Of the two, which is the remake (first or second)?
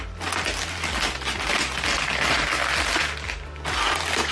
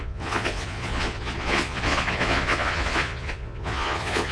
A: second